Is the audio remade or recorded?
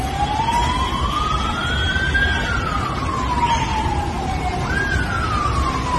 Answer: recorded